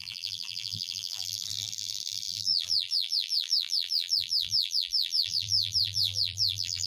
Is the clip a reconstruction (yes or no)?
yes